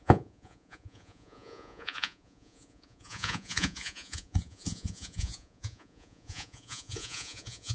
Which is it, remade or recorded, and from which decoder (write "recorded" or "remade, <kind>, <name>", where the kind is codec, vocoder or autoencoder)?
remade, vocoder, Vocos